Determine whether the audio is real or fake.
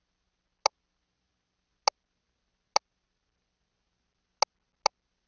real